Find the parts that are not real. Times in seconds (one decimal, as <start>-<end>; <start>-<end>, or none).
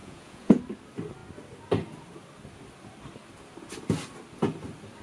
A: 0.0-0.6